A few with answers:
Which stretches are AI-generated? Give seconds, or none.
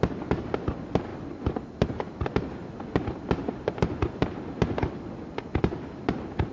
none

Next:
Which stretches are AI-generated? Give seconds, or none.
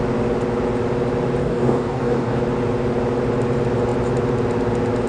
1.4-2.4 (codec, DAC)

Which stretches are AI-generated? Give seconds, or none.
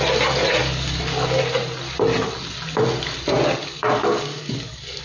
0.6-1.4 (codec, DAC); 3.6-5.0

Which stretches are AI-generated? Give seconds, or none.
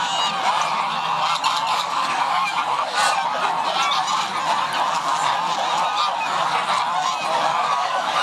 1.7-3.0 (codec, DAC); 7.5-8.2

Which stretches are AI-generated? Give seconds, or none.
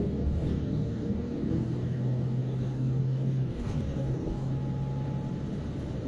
0.0-4.5 (codec, DAC)